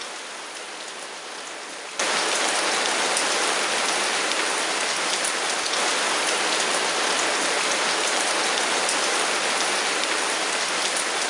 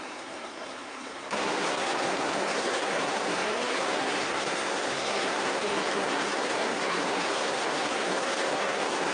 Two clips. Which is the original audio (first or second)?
first